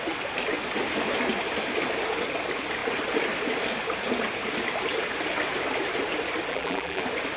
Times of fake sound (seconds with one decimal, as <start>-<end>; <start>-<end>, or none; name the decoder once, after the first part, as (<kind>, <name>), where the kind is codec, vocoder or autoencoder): 6.5-7.0 (vocoder, BigVGAN v2)